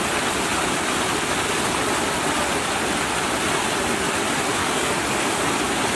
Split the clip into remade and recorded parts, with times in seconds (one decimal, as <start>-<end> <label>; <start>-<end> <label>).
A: 0.0-4.6 recorded; 4.6-5.4 remade; 5.4-6.0 recorded